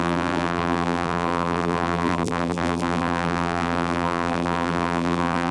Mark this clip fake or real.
fake